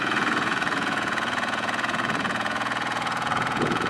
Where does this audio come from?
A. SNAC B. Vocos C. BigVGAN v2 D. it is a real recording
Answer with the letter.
B